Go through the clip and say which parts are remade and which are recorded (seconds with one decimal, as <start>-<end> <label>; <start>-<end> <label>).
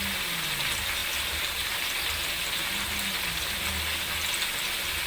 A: 0.0-5.1 recorded